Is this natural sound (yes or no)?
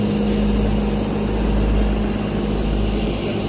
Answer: yes